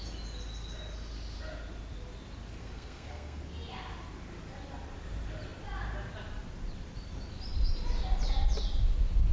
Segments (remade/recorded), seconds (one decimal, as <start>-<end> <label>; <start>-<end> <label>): 0.0-2.6 recorded; 2.6-3.4 remade; 3.4-9.3 recorded